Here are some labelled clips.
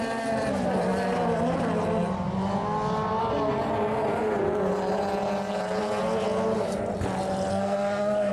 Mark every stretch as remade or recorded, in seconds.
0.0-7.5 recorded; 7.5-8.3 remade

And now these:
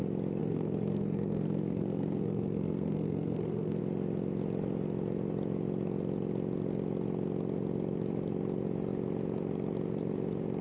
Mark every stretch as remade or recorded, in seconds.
0.0-0.4 recorded; 0.4-3.8 remade; 3.8-10.6 recorded

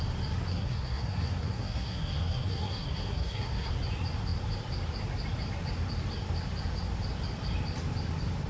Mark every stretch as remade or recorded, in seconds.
0.0-0.5 recorded; 0.5-3.7 remade; 3.7-8.5 recorded